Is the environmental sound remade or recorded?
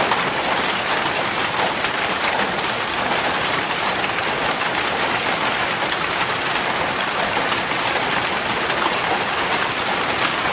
recorded